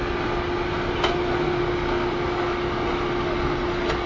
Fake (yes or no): no